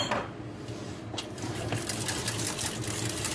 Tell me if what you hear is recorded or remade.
recorded